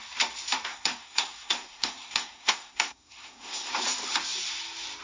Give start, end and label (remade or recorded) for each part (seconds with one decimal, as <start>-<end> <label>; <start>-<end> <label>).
0.0-0.7 recorded; 0.7-3.7 remade; 3.7-5.0 recorded